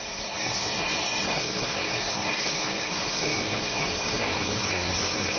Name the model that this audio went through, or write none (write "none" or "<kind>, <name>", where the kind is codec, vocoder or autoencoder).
codec, SNAC